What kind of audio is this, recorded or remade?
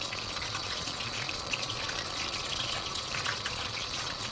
remade